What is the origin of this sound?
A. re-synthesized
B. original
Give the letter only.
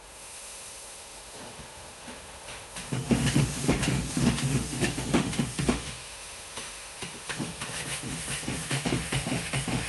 A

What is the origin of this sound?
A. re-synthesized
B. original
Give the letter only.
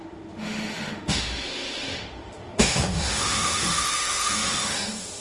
A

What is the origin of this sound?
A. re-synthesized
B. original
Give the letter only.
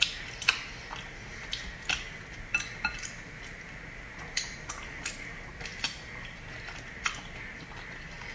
B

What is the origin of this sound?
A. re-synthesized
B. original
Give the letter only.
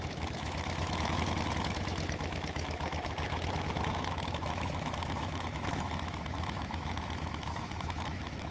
A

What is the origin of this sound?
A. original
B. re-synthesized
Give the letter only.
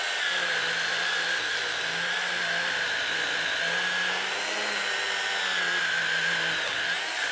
A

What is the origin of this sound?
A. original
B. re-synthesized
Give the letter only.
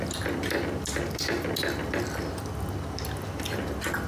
A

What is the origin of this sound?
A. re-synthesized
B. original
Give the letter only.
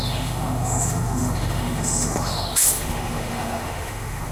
A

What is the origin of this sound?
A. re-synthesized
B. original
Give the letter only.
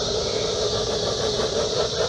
B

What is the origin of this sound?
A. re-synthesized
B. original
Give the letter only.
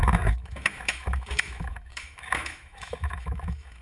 A